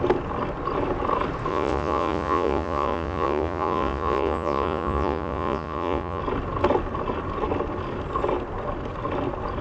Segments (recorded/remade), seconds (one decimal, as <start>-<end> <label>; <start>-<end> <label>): 0.0-1.5 recorded; 1.5-6.2 remade; 6.2-9.6 recorded